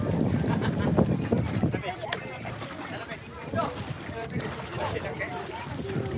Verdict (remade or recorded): recorded